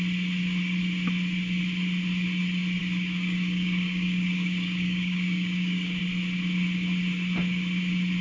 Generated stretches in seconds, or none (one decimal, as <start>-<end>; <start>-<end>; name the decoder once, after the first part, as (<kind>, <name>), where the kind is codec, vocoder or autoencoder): 2.8-6.0 (codec, DAC)